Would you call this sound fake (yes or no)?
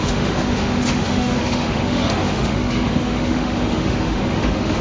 yes